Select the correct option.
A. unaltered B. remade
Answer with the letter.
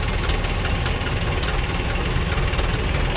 A